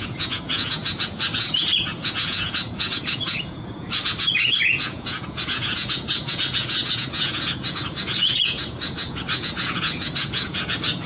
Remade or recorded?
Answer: remade